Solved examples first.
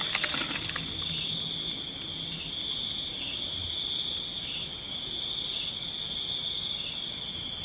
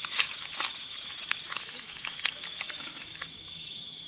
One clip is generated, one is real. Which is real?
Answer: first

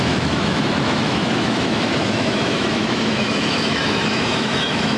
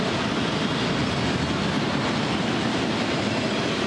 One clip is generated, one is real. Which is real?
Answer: second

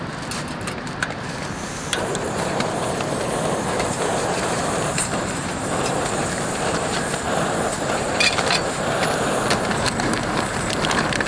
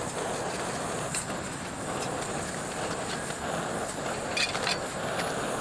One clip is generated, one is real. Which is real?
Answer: second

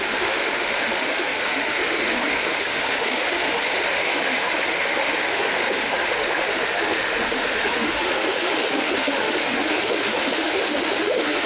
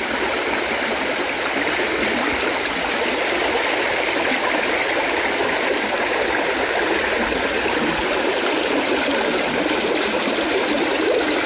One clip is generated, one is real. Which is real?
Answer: second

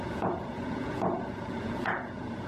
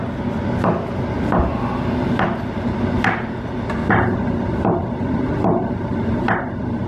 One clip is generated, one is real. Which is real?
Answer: second